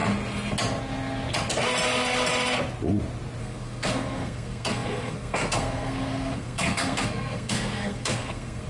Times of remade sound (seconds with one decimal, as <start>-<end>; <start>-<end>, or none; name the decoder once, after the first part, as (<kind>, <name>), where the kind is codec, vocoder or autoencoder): 3.4-8.7 (codec, SNAC)

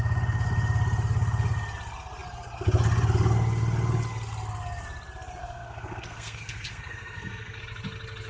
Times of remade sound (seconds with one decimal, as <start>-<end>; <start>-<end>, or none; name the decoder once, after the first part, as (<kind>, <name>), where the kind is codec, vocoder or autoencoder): 5.4-7.6 (codec, SNAC)

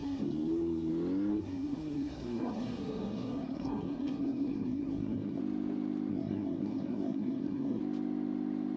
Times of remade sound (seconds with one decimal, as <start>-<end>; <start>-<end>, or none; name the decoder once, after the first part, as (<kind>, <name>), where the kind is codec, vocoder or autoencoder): 0.0-0.9 (codec, SNAC); 1.3-5.4; 6.1-7.8

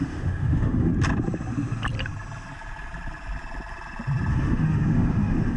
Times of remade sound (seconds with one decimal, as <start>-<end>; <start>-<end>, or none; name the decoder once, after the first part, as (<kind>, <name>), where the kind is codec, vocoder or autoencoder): 0.0-0.9 (autoencoder, DAC-VAE); 4.3-5.6

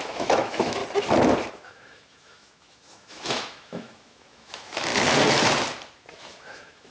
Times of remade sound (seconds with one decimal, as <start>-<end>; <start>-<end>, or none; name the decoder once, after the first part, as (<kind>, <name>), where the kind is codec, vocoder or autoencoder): 0.0-0.8 (autoencoder, DAC-VAE); 1.5-4.9; 6.0-6.9

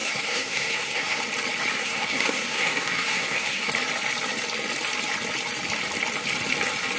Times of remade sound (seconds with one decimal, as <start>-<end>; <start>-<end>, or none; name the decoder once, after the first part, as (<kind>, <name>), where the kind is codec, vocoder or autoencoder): 0.0-1.2 (codec, SNAC); 1.7-3.7

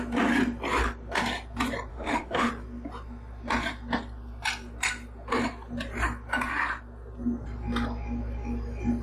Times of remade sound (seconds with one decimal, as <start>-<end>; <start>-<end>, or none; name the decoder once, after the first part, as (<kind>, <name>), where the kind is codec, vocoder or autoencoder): 1.9-2.5 (autoencoder, DAC-VAE)